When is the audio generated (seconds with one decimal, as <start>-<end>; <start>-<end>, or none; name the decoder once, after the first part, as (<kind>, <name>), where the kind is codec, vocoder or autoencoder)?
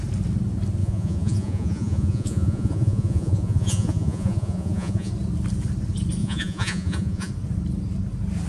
0.8-5.1 (vocoder, Vocos); 6.2-7.3